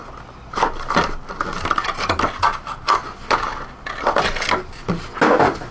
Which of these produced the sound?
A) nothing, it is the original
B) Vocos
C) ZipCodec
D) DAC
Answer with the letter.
A